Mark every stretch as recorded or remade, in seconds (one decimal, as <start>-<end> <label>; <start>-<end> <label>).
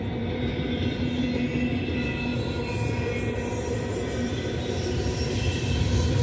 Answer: 0.0-6.2 recorded